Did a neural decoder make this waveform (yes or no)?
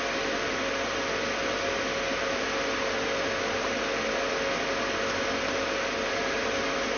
no